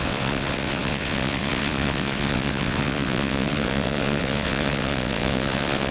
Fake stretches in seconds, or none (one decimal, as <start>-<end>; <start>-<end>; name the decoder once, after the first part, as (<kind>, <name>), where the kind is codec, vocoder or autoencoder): 0.0-5.9 (vocoder, WaveNeXt)